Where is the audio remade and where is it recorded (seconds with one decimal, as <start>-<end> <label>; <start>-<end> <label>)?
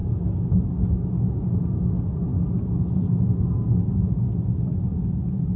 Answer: 0.0-0.6 remade; 0.6-5.6 recorded